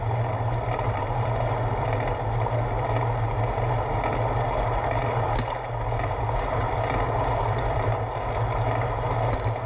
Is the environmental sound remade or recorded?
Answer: recorded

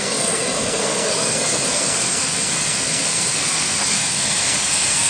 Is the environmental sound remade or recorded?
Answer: remade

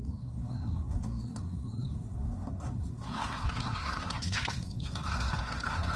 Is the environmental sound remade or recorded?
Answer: remade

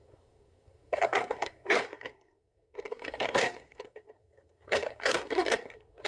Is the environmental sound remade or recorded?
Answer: remade